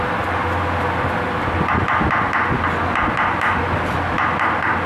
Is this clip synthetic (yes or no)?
no